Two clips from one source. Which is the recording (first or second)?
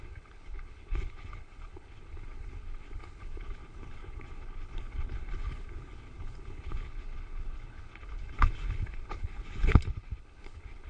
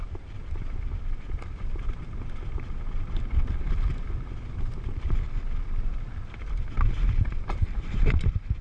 second